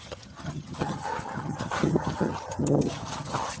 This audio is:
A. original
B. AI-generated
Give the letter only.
B